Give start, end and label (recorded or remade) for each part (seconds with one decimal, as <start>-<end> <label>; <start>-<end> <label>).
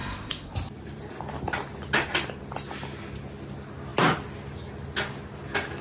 0.0-2.4 remade; 2.4-5.8 recorded